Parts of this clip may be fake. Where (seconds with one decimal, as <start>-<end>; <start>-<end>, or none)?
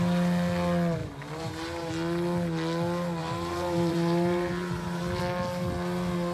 1.0-1.9; 3.2-5.2